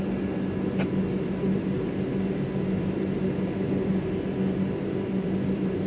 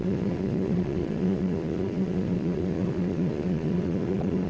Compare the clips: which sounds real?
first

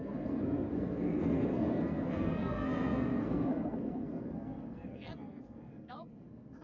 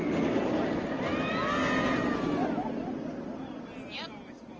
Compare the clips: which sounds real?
second